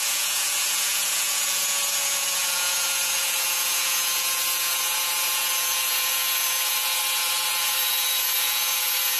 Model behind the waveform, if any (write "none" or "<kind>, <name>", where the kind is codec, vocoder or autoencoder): vocoder, Vocos